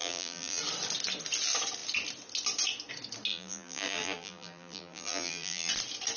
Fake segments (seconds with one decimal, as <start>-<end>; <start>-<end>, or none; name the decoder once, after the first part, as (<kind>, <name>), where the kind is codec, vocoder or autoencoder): 0.0-0.6 (vocoder, BigVGAN v2); 3.3-5.7